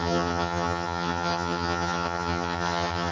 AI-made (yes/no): yes